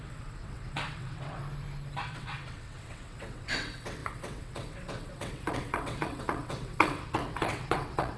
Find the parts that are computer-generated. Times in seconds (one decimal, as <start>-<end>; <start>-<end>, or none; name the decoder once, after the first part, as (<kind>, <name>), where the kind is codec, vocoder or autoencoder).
0.0-1.4 (vocoder, WaveNeXt); 2.0-8.2